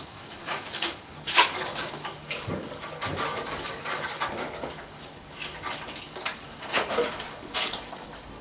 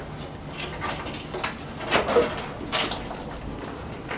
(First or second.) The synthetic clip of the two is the first